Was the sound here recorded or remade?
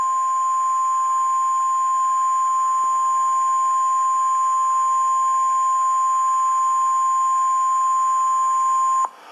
recorded